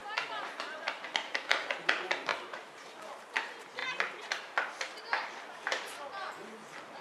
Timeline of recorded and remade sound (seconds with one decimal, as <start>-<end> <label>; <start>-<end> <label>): 0.0-1.9 remade; 1.9-2.3 recorded; 2.3-3.3 remade; 3.3-6.4 recorded; 6.4-7.0 remade

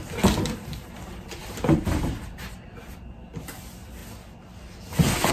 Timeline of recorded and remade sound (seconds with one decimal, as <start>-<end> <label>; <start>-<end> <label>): 0.0-1.4 recorded; 1.4-2.8 remade; 2.8-5.3 recorded

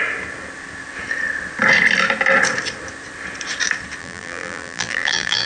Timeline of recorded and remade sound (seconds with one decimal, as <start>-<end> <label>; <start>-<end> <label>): 0.0-4.0 recorded; 4.0-5.5 remade

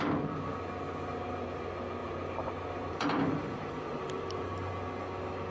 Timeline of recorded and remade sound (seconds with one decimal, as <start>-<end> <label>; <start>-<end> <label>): 0.0-2.0 recorded; 2.0-4.7 remade; 4.7-5.5 recorded

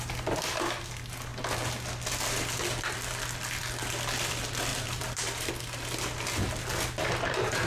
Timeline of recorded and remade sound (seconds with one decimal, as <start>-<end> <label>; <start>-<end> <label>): 0.0-4.7 recorded; 4.7-5.5 remade; 5.5-7.7 recorded

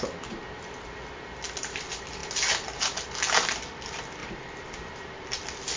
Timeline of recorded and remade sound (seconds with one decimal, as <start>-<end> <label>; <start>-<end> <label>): 0.0-4.2 recorded; 4.2-5.8 remade

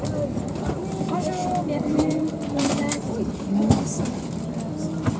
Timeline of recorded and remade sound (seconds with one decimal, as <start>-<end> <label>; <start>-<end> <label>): 0.0-1.4 recorded; 1.4-2.7 remade; 2.7-5.2 recorded